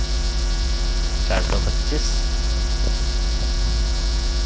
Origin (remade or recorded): remade